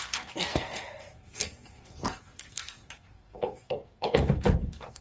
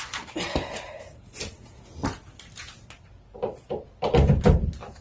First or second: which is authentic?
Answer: second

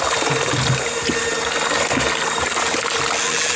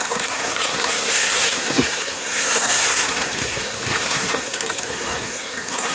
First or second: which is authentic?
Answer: first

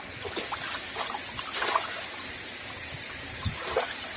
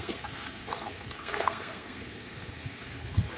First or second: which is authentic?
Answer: first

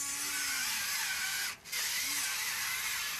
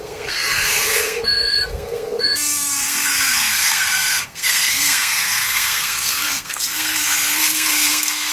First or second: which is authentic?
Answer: first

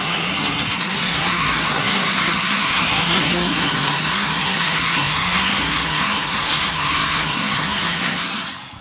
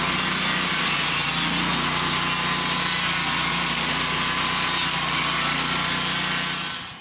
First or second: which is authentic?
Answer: second